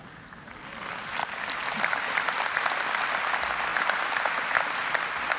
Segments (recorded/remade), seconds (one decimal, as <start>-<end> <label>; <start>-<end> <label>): 0.0-5.4 recorded